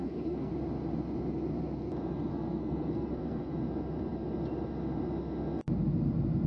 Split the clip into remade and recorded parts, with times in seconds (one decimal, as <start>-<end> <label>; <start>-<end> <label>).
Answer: 0.0-0.5 remade; 0.5-2.3 recorded; 2.3-3.4 remade; 3.4-6.5 recorded